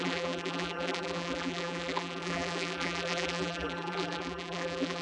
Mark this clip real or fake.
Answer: fake